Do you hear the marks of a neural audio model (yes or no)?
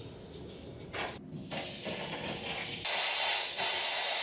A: no